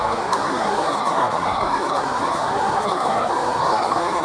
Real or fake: fake